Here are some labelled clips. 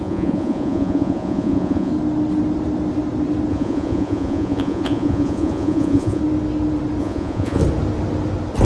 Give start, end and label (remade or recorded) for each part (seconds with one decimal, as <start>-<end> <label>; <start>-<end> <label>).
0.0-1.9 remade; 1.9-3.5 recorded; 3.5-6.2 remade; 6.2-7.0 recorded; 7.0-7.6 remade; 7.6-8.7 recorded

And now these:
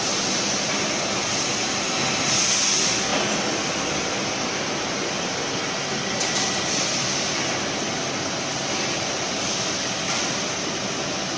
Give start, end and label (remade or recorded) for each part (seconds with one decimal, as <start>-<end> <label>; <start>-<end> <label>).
0.0-11.4 recorded

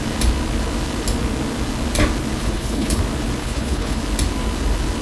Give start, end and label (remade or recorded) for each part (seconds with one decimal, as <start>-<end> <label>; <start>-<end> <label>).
0.0-2.4 recorded; 2.4-3.0 remade; 3.0-3.4 recorded; 3.4-4.0 remade; 4.0-5.0 recorded